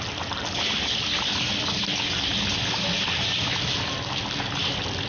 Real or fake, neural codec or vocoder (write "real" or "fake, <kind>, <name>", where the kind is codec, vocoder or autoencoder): real